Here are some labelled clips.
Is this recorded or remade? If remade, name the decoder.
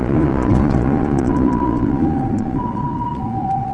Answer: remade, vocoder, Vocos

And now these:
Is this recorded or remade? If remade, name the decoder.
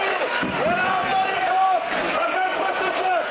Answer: recorded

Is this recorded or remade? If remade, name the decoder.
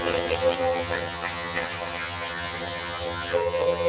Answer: remade, vocoder, HiFi-GAN